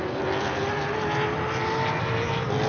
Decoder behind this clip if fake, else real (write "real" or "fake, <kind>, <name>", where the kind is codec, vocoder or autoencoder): real